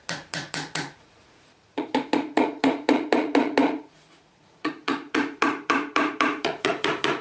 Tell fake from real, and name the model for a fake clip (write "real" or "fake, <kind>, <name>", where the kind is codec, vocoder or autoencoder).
fake, vocoder, Vocos